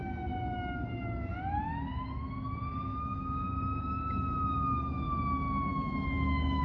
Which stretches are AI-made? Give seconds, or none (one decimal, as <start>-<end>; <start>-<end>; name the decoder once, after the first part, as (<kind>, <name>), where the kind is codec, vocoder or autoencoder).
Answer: 2.9-3.5 (autoencoder, DAC-VAE); 5.7-6.6